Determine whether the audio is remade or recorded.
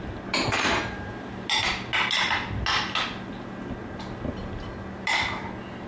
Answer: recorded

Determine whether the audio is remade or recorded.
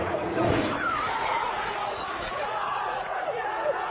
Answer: remade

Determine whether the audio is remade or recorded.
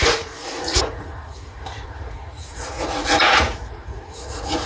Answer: remade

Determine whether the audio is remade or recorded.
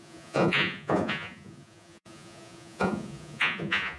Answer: remade